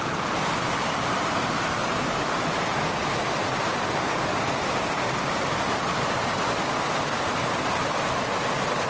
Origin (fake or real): real